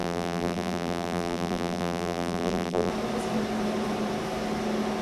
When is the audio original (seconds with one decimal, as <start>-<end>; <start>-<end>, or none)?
2.9-5.0